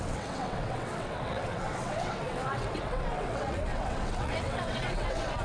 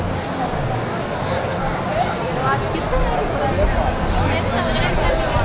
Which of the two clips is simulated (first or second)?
first